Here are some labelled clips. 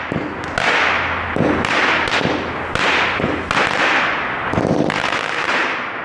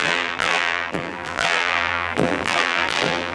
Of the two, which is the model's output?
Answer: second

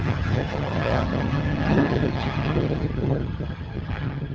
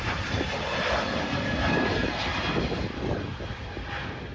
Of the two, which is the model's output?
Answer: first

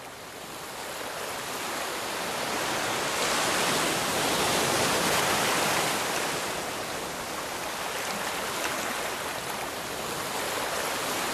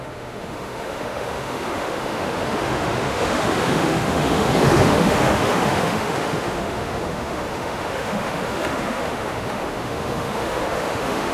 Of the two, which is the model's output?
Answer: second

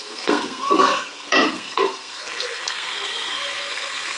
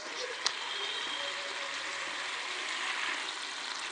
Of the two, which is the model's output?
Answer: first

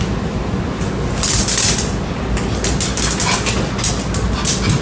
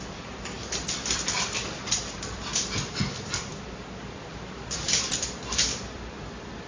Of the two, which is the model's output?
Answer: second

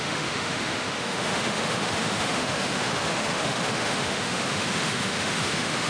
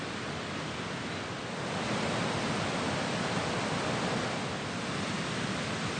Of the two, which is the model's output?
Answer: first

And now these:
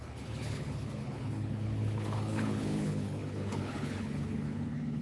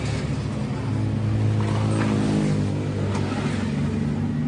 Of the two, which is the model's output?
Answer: first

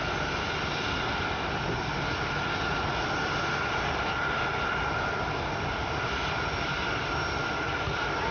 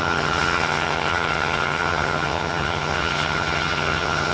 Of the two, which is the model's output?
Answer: second